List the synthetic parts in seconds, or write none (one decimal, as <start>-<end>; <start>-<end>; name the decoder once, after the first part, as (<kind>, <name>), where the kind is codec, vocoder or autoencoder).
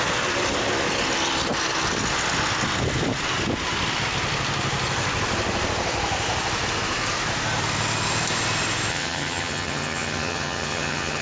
8.9-11.2 (vocoder, HiFi-GAN)